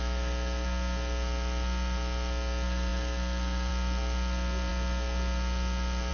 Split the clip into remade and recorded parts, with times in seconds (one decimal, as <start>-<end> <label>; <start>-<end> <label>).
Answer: 0.0-6.1 recorded